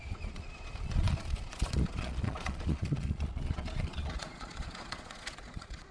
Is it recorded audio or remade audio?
remade